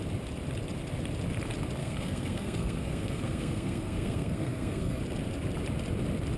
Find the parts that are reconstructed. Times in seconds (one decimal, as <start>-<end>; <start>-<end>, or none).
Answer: 1.8-5.0